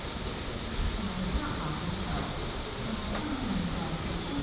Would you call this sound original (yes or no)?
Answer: yes